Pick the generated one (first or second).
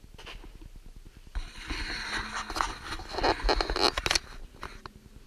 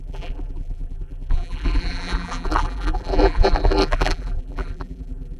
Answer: second